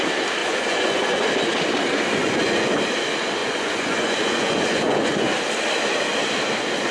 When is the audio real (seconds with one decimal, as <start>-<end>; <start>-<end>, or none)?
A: 0.0-0.4; 1.3-2.2; 2.7-3.4; 5.3-6.9